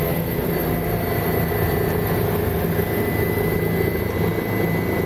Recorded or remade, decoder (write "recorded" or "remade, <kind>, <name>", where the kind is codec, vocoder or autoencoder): recorded